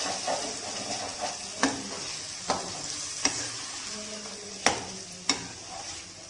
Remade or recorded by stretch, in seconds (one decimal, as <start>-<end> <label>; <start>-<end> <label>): 0.0-6.3 recorded